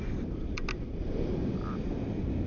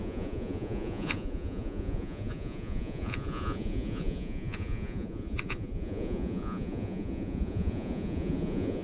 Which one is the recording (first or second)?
first